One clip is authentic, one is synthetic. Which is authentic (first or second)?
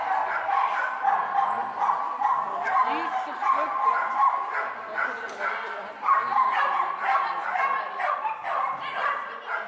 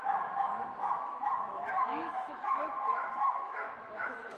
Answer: first